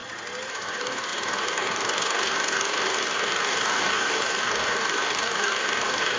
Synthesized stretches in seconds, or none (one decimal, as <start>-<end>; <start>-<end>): 0.5-6.2